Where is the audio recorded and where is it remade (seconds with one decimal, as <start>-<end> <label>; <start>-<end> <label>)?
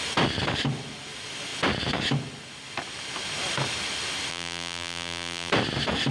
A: 0.0-4.3 recorded; 4.3-5.5 remade; 5.5-6.1 recorded